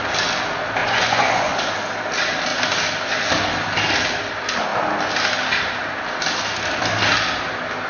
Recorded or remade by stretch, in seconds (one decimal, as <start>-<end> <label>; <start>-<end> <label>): 0.0-0.8 recorded; 0.8-1.6 remade; 1.6-7.9 recorded